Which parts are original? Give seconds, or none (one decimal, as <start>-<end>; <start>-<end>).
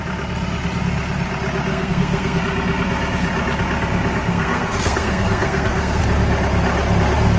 0.0-1.7; 2.4-4.3; 6.0-7.4